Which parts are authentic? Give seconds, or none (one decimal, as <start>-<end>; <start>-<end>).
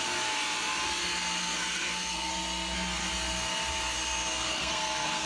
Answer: 0.0-1.4; 2.3-4.5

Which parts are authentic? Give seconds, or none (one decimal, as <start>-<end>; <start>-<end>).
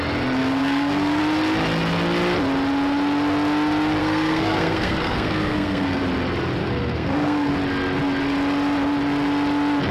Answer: 0.0-0.4; 1.2-4.0; 6.0-6.6; 7.5-9.9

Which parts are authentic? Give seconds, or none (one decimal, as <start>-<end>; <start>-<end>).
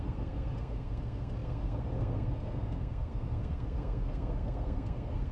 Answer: none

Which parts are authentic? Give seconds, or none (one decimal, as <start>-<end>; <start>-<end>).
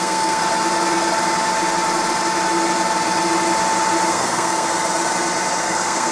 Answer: 0.4-4.1; 4.7-5.6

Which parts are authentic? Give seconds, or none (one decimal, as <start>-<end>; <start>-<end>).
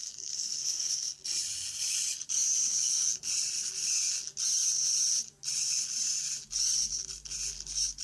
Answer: 0.9-2.7; 3.3-8.0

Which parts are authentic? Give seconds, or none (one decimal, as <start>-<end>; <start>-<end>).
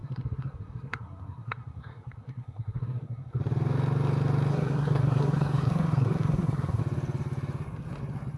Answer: 3.4-4.5; 6.8-8.4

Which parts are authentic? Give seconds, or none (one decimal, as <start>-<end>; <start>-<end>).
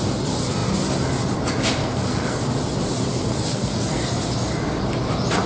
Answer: 0.0-1.8; 2.4-3.1; 4.1-5.5